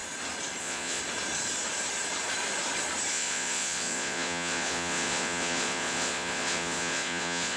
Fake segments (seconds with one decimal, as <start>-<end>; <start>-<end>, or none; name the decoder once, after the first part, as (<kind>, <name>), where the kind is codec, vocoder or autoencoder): 0.6-1.0 (vocoder, Vocos); 3.1-7.6